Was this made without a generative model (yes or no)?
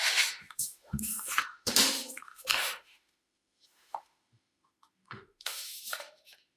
no